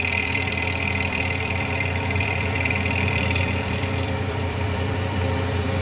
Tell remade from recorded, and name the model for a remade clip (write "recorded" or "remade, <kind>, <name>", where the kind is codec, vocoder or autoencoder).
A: remade, vocoder, BigVGAN v2